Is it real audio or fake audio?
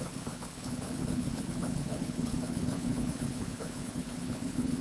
fake